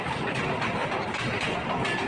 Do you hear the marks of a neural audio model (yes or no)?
no